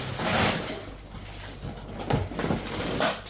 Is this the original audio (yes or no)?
yes